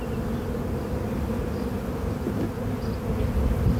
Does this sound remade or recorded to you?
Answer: recorded